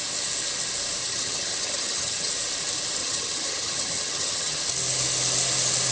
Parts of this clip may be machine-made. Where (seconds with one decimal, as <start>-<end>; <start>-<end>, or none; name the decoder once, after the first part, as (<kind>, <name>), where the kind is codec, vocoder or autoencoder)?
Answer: 1.0-2.3 (vocoder, HiFi-GAN); 3.0-4.6